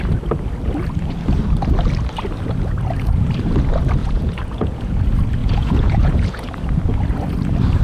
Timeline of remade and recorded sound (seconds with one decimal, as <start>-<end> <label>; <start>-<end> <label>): 0.0-4.0 recorded; 4.0-5.0 remade; 5.0-5.4 recorded; 5.4-6.5 remade; 6.5-7.8 recorded